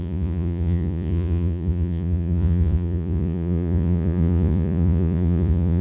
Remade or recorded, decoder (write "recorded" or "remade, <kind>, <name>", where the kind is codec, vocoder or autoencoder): remade, vocoder, Vocos